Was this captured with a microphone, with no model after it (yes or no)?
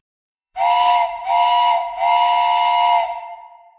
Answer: no